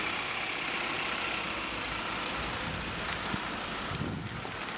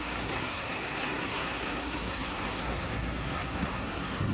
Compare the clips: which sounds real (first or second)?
first